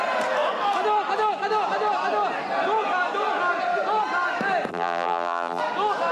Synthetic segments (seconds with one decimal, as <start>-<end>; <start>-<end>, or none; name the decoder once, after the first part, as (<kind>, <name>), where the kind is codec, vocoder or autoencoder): 4.7-5.6 (vocoder, BigVGAN v2)